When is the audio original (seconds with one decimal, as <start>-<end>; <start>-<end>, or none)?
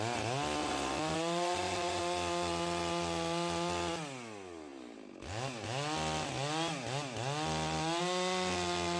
0.0-0.6; 2.0-9.0